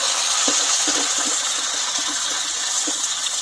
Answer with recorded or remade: remade